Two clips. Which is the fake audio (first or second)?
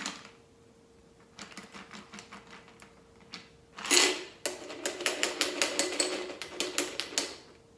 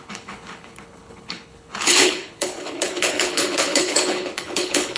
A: second